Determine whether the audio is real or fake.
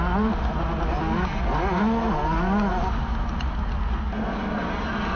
real